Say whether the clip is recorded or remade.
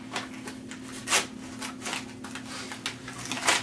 recorded